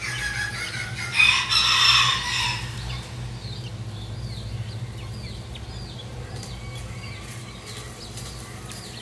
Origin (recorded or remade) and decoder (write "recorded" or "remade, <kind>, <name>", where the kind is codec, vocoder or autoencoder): recorded